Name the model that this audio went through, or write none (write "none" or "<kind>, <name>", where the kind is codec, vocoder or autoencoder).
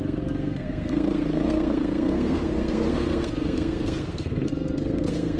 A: codec, SNAC